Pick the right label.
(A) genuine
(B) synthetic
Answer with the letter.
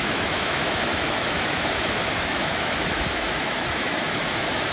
B